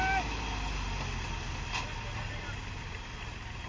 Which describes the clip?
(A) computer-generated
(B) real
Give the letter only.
B